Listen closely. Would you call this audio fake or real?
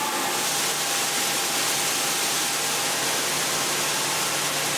real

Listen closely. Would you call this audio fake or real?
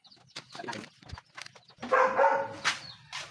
real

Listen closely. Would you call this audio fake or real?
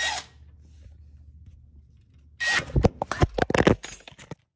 real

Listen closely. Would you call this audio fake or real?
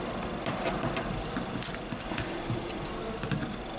real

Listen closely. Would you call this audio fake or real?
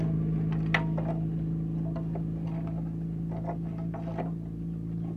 real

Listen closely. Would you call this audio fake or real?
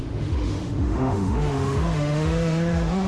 fake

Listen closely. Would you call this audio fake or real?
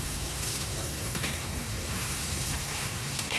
fake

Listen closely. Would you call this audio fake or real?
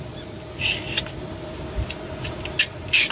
real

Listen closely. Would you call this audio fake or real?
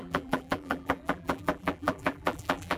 fake